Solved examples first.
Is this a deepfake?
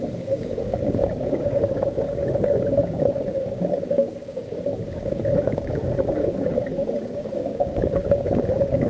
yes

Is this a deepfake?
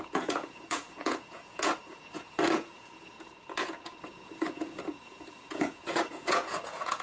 yes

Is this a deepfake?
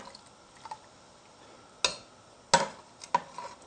no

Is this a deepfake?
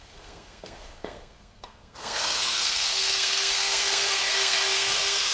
yes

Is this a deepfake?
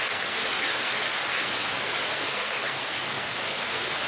yes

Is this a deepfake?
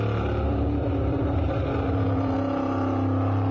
no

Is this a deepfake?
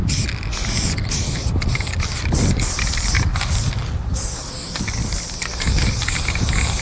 no